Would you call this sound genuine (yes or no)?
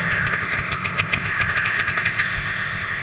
no